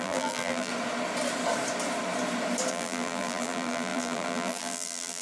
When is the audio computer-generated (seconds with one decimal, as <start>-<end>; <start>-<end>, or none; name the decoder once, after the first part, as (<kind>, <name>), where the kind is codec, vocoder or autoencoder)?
0.0-0.7 (vocoder, BigVGAN v2); 2.7-5.2

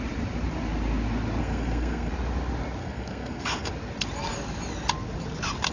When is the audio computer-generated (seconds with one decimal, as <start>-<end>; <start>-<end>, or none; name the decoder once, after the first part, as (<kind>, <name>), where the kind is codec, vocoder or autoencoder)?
1.4-2.1 (codec, SNAC); 2.8-3.7

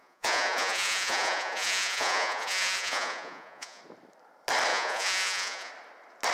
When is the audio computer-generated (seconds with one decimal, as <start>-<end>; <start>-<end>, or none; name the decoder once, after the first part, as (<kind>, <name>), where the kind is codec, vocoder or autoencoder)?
0.0-3.8 (vocoder, Vocos); 4.7-5.7